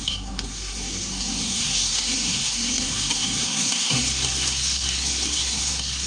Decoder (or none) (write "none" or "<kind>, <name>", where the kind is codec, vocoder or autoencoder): codec, SNAC